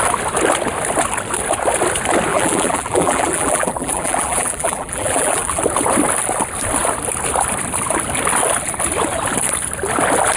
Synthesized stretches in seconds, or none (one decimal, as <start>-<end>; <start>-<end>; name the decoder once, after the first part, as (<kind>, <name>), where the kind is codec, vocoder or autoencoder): 2.3-5.6 (vocoder, BigVGAN v2)